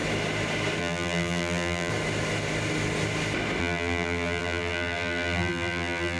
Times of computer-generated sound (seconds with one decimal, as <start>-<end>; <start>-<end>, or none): 0.8-1.9; 3.6-6.2